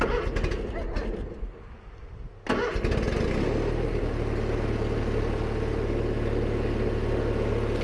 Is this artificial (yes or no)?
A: no